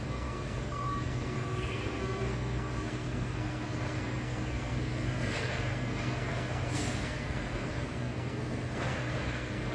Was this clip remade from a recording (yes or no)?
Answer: yes